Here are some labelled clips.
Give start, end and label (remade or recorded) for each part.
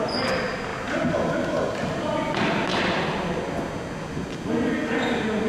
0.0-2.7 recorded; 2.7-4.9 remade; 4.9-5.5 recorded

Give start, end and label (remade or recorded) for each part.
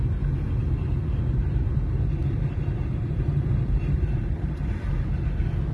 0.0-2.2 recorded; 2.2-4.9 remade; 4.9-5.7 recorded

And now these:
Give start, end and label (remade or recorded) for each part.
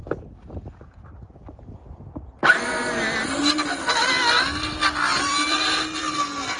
0.0-5.0 recorded; 5.0-6.0 remade; 6.0-6.6 recorded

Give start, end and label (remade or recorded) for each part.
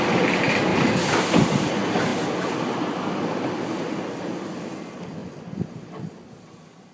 0.0-0.7 recorded; 0.7-1.7 remade; 1.7-6.9 recorded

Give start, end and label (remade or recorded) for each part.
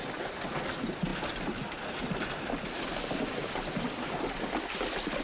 0.0-5.2 recorded